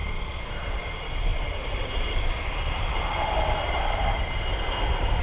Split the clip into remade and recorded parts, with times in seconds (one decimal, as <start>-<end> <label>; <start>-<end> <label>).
0.0-0.5 remade; 0.5-1.3 recorded; 1.3-4.2 remade; 4.2-5.2 recorded